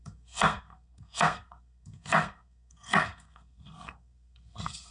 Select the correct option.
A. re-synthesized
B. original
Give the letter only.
A